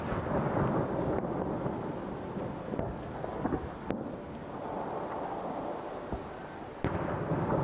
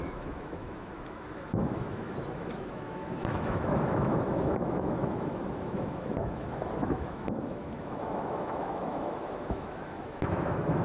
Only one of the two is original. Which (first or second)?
first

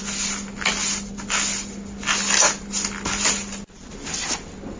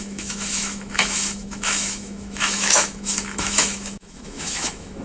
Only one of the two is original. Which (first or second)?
first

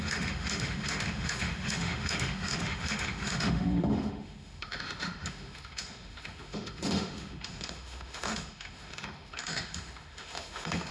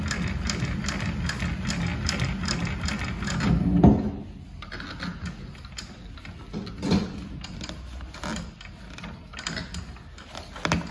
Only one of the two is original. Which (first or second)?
second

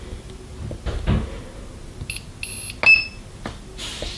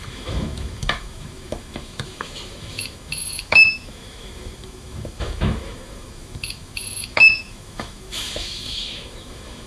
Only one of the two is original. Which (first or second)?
first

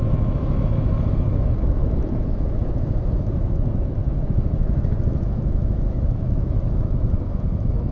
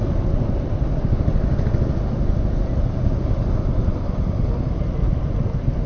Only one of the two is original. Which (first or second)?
second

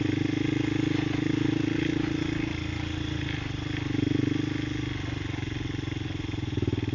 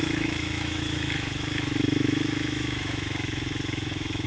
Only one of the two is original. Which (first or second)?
first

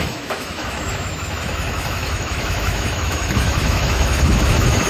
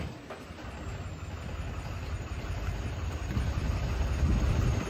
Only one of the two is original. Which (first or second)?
second